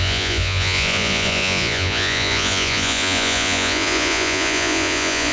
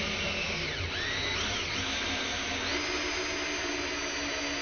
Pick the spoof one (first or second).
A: first